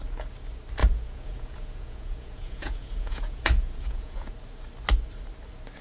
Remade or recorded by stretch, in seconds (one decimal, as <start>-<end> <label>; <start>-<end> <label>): 0.0-0.8 recorded; 0.8-4.3 remade; 4.3-5.8 recorded